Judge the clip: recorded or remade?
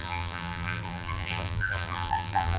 remade